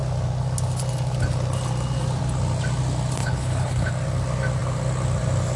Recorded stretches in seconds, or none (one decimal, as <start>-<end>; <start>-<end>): 0.0-3.2; 3.9-5.6